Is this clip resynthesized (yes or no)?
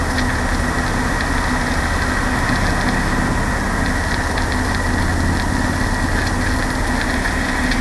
no